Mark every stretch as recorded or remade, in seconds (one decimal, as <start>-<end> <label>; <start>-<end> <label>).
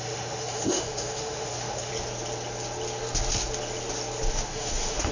0.0-1.9 remade; 1.9-4.3 recorded; 4.3-5.1 remade